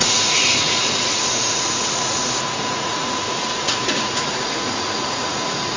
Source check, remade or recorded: remade